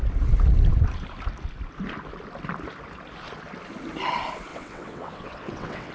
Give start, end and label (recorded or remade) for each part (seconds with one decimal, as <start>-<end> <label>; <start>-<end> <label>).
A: 0.0-4.5 recorded; 4.5-5.9 remade